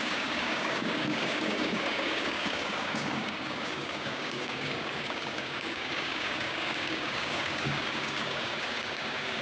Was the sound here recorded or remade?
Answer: remade